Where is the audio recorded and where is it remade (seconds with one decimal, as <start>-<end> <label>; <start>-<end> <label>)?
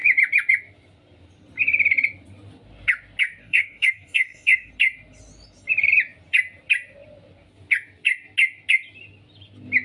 0.0-3.4 recorded; 3.4-4.7 remade; 4.7-9.8 recorded